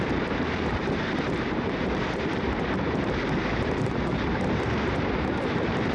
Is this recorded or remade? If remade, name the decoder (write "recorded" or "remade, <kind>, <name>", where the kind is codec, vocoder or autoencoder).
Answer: remade, vocoder, BigVGAN v2